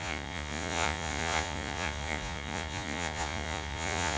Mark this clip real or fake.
fake